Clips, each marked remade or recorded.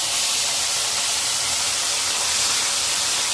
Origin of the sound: remade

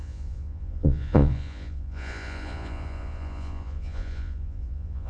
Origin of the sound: remade